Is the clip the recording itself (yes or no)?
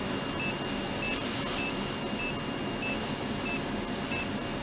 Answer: yes